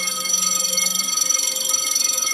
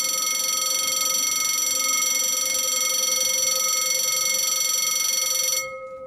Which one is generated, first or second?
first